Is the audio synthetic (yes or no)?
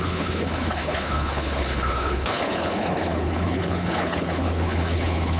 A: yes